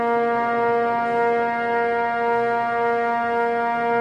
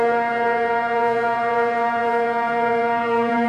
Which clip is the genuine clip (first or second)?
first